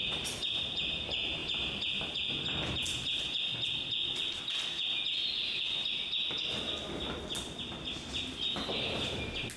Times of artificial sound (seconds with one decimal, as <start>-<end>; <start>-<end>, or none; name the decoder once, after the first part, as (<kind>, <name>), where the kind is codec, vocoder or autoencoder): none